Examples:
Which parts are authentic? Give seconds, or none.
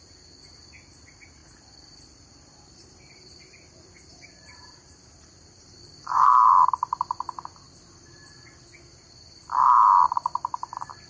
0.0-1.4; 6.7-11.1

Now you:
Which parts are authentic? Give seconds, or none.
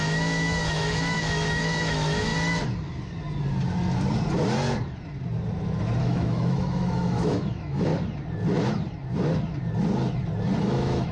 2.3-6.0; 7.9-10.6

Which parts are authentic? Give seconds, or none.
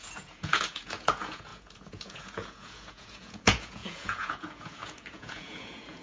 none